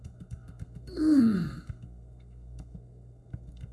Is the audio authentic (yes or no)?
no